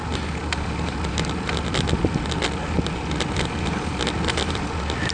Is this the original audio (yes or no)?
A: yes